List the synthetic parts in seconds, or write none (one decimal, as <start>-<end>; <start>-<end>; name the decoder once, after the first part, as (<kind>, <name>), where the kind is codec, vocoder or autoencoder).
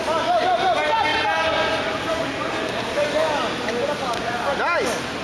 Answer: none